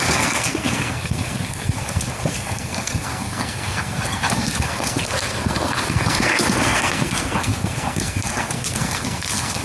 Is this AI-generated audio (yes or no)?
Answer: yes